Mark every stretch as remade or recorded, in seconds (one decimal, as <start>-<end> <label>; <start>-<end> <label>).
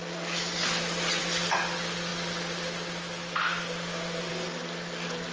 0.0-5.3 recorded